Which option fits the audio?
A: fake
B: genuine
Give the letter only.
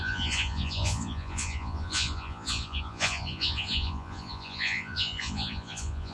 A